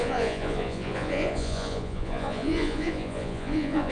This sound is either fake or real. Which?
fake